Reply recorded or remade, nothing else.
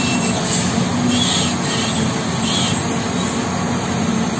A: recorded